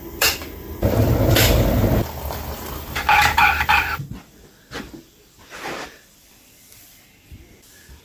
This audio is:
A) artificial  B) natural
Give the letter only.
A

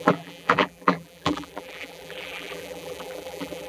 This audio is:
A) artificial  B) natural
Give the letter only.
A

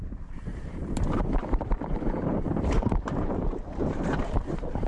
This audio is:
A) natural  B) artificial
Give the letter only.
B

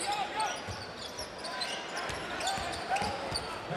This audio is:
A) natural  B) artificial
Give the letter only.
B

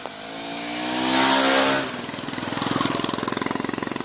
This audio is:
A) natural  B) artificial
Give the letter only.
A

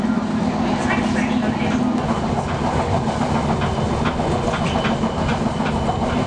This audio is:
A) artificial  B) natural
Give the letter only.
B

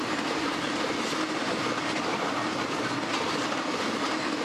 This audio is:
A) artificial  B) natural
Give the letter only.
B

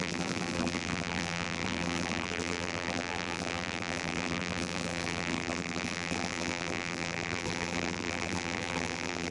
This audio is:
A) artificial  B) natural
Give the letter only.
A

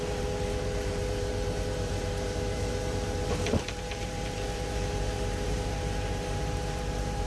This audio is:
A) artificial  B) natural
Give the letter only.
A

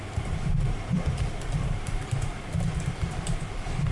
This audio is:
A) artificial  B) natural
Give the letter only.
A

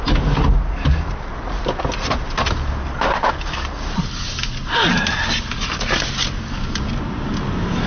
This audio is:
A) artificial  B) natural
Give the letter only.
B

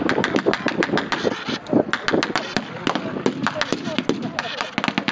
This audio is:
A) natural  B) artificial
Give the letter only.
A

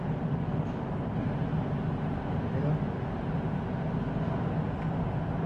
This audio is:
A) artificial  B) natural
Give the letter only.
B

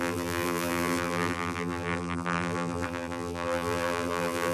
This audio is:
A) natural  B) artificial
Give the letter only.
B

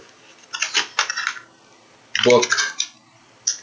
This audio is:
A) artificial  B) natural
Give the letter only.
B